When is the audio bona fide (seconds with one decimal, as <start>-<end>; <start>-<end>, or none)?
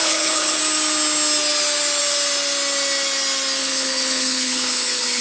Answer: 0.6-3.6